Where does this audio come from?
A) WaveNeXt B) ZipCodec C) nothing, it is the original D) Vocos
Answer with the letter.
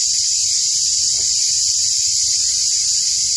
C